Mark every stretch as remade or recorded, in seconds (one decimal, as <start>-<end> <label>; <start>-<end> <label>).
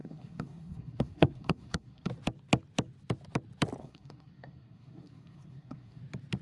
0.0-2.1 remade; 2.1-3.8 recorded; 3.8-6.0 remade; 6.0-6.4 recorded